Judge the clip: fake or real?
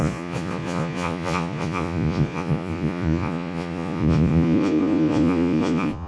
fake